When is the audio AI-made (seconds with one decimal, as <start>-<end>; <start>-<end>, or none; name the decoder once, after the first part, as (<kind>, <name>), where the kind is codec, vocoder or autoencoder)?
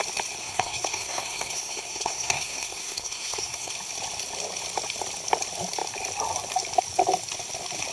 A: 0.4-3.7 (codec, SNAC)